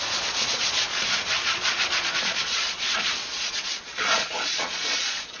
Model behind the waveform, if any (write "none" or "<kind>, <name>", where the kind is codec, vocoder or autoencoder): vocoder, Vocos